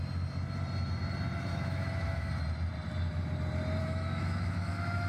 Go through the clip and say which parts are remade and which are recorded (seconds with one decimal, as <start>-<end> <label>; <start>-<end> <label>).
0.0-1.5 recorded; 1.5-2.3 remade; 2.3-3.8 recorded; 3.8-5.1 remade